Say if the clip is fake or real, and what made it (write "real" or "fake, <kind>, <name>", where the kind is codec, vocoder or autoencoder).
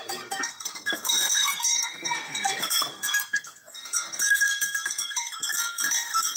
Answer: fake, codec, SNAC